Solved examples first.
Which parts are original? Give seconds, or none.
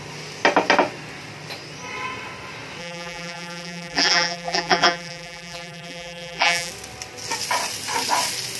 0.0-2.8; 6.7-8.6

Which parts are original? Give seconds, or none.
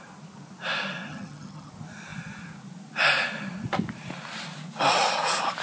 0.0-1.1; 1.7-5.6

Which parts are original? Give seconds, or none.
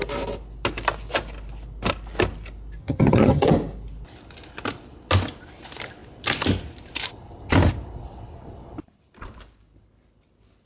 0.0-2.8; 3.5-10.7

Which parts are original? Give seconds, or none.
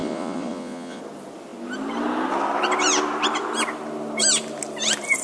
1.0-5.2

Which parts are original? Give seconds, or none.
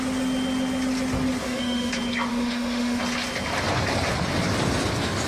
0.0-1.4; 1.9-2.3; 3.0-5.3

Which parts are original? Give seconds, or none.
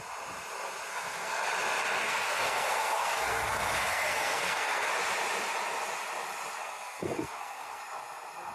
0.0-0.9; 1.5-2.0; 4.9-6.6; 7.8-8.5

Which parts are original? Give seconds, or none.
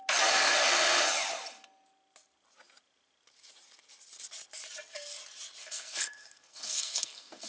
0.0-5.6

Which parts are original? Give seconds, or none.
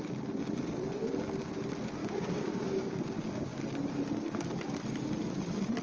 0.0-2.0; 2.9-5.8